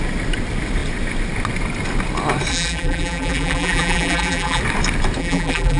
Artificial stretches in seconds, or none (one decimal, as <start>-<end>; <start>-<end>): 2.5-4.6; 5.2-5.8